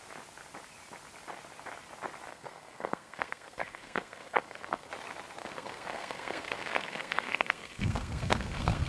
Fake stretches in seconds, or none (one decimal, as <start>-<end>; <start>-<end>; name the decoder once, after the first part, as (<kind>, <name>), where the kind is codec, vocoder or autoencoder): 2.3-4.9 (codec, SNAC); 5.4-8.9